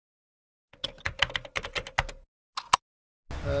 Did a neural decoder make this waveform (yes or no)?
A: no